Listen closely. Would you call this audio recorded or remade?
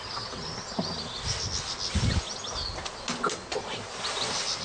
recorded